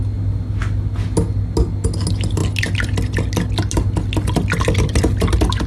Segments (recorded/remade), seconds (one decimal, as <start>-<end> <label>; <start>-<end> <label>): 0.0-5.7 recorded